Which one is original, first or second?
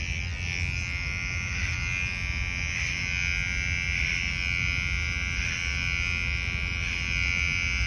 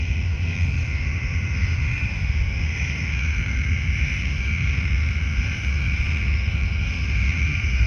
first